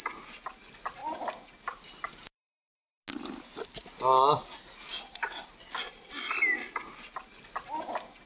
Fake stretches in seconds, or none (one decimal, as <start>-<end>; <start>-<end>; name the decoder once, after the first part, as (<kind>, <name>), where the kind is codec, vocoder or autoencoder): none